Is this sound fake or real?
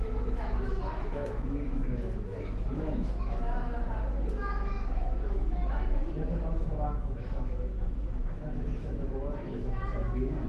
fake